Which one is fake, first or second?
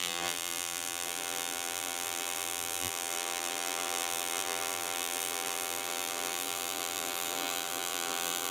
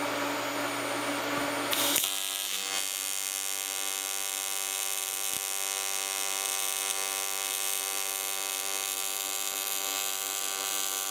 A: first